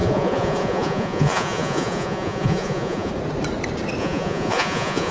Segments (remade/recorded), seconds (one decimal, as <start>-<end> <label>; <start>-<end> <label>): 0.0-3.1 remade; 3.1-4.0 recorded; 4.0-5.1 remade